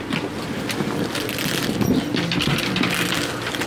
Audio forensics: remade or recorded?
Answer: recorded